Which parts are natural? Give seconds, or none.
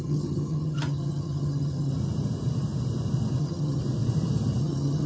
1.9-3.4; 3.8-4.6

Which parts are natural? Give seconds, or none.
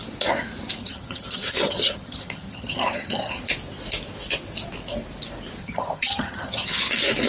0.0-0.8; 3.4-5.6; 6.8-7.3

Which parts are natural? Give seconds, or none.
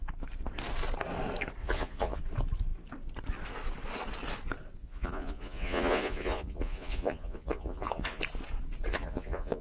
0.0-1.6; 2.2-4.8; 8.2-8.9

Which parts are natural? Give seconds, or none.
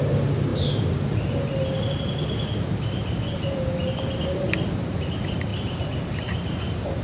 0.0-5.5; 6.2-7.0